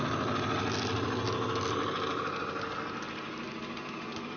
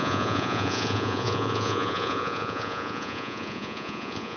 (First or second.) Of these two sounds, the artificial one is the second